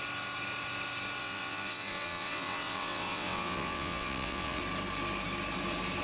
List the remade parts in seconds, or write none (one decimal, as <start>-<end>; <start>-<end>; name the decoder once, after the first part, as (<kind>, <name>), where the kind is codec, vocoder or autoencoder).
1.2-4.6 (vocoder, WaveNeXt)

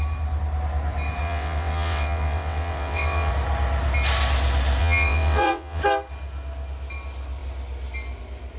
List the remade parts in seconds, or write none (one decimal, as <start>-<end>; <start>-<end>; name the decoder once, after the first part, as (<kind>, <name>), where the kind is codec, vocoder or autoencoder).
1.2-3.3 (vocoder, WaveNeXt); 4.8-5.8

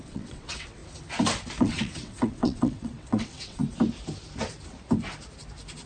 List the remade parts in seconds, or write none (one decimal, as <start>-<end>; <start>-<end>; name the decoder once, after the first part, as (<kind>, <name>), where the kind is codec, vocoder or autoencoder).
0.0-0.8 (vocoder, WaveNeXt); 1.6-3.6

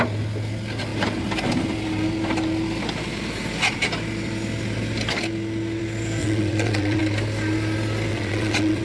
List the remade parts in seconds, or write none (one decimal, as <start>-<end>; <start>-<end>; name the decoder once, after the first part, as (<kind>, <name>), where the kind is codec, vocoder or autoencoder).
6.2-7.0 (vocoder, WaveNeXt); 8.1-8.8

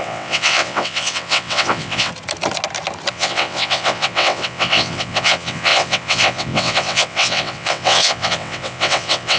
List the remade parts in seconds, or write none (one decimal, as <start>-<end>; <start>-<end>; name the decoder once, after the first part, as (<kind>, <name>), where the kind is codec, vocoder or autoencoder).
0.0-2.1 (vocoder, WaveNeXt); 3.1-9.4